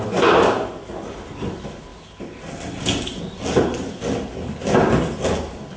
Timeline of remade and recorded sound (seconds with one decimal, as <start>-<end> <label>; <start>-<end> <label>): 0.0-5.8 recorded